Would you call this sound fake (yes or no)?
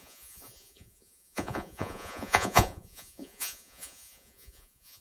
yes